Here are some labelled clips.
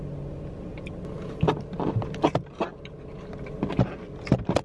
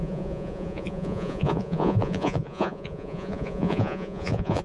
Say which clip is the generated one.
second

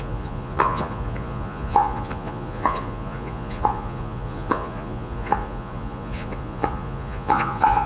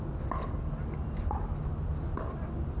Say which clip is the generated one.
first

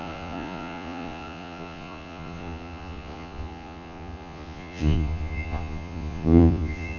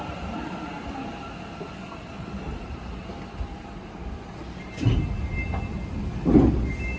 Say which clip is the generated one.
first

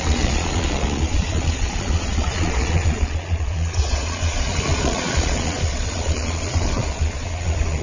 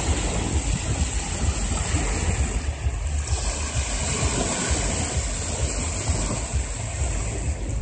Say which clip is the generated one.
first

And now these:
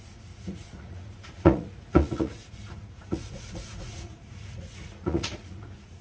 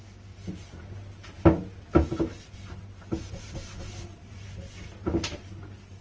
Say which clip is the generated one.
first